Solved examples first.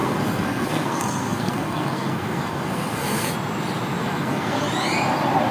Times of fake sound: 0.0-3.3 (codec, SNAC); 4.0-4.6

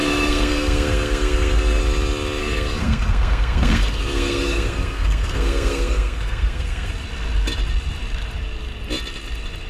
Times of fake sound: 0.0-1.8 (codec, SNAC); 2.4-6.9